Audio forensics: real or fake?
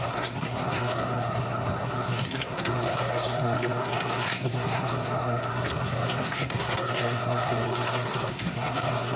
fake